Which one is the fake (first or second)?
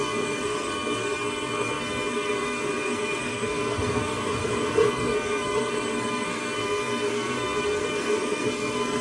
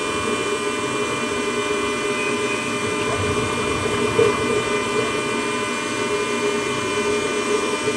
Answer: first